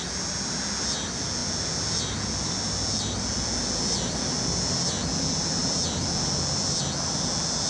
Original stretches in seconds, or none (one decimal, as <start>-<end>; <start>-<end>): none